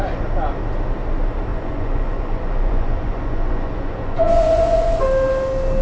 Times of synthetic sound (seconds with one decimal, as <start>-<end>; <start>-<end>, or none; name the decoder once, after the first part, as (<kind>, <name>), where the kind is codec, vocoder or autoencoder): 1.5-5.0 (vocoder, Vocos)